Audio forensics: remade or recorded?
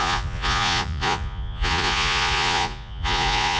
remade